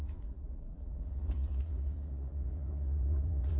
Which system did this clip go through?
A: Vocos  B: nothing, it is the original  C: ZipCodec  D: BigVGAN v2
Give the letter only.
A